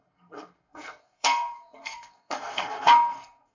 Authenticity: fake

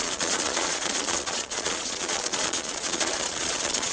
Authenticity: fake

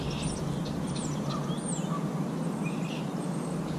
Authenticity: real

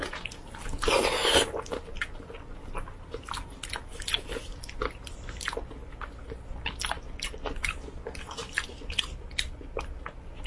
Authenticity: real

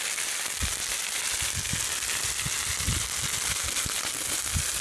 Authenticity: real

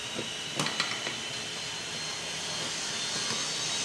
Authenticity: real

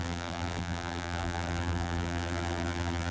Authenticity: fake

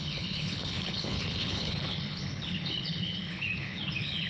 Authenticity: fake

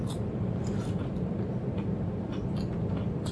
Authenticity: real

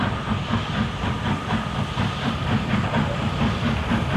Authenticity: fake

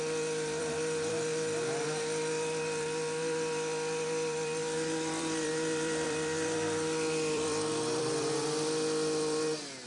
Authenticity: fake